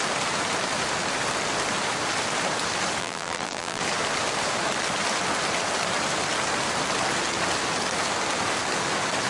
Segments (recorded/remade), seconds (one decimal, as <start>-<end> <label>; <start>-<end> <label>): 0.0-3.0 recorded; 3.0-3.8 remade; 3.8-9.3 recorded